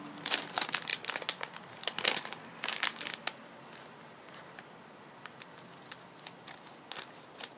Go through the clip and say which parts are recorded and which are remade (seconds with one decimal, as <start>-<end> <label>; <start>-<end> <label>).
0.0-7.6 recorded